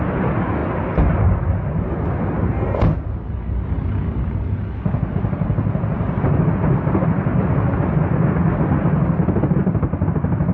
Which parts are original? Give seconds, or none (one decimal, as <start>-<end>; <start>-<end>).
0.0-10.5